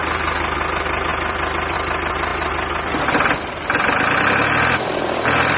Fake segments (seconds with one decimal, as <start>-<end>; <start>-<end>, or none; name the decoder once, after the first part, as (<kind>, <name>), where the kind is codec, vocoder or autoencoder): none